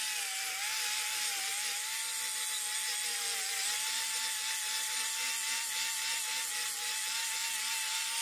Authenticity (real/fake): real